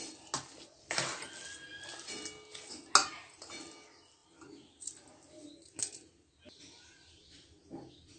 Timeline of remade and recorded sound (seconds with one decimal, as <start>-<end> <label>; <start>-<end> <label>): 0.0-8.2 recorded